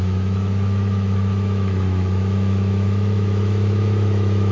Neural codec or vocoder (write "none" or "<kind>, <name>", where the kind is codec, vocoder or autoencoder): autoencoder, DAC-VAE